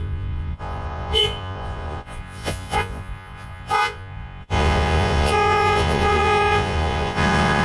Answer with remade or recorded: remade